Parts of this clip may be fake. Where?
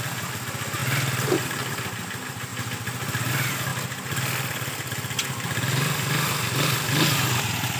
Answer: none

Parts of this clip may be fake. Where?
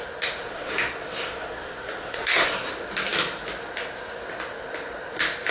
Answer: 0.5-2.7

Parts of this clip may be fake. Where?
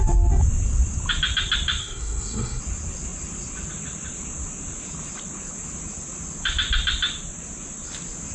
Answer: 1.8-2.6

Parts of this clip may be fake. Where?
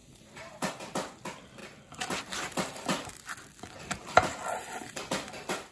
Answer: 0.0-0.7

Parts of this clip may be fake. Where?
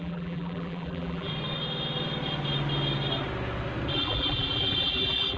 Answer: 0.0-1.3; 3.9-5.4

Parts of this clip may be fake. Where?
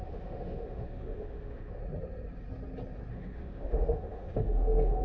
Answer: 0.0-1.8; 3.1-5.0